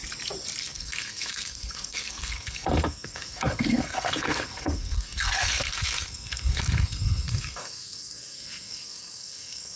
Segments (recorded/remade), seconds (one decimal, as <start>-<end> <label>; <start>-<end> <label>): 0.0-0.6 recorded; 0.6-9.8 remade